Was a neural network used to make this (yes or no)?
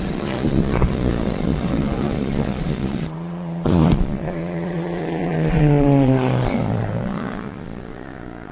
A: yes